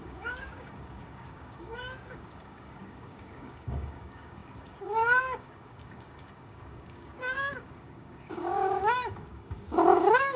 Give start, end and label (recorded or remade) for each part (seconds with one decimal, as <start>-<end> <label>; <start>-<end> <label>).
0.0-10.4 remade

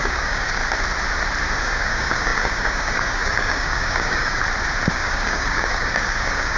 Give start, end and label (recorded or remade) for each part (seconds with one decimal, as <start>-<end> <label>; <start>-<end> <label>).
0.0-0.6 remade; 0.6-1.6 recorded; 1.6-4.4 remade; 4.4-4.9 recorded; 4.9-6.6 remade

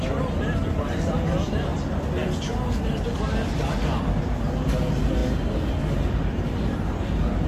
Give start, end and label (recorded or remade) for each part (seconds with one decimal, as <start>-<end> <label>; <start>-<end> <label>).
0.0-7.5 recorded